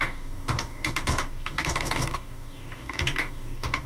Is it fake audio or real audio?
fake